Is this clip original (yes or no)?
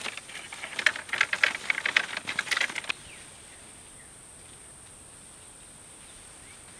yes